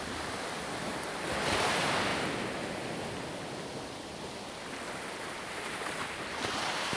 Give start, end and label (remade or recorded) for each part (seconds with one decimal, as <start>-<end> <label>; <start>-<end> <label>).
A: 0.0-0.9 remade; 0.9-1.5 recorded; 1.5-2.1 remade; 2.1-6.3 recorded; 6.3-7.0 remade